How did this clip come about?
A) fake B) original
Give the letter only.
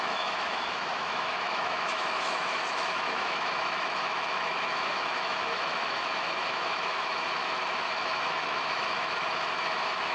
A